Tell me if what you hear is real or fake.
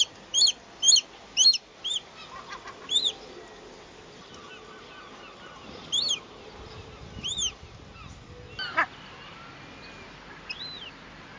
real